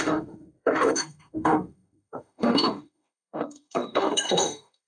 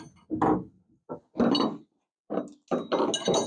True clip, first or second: second